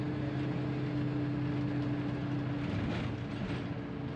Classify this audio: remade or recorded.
recorded